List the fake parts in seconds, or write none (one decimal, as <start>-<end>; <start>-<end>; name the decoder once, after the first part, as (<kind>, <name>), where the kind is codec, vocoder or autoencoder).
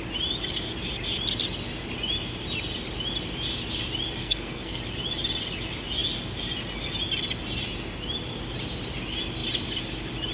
4.2-4.8 (codec, SNAC)